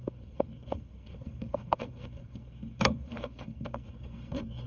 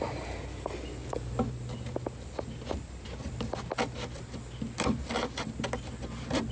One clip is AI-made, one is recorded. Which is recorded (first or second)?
second